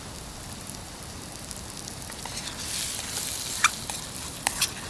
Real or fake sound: real